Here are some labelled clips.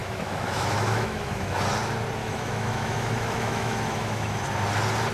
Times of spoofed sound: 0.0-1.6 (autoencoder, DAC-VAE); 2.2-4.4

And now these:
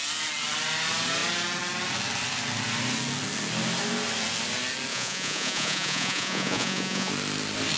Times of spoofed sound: 4.9-7.1 (vocoder, Vocos)